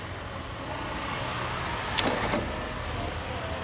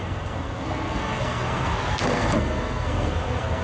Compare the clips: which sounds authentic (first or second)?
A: first